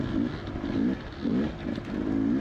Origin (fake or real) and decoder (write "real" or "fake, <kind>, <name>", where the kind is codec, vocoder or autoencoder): real